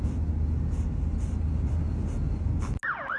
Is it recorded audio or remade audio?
recorded